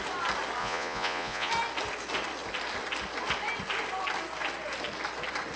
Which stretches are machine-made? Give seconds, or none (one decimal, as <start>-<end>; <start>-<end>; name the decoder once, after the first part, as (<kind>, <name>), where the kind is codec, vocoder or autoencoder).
0.6-1.5 (vocoder, Vocos)